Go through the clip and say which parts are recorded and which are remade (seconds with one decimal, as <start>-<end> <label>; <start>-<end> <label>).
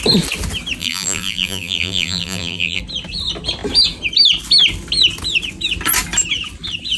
0.0-0.8 recorded; 0.8-2.8 remade; 2.8-7.0 recorded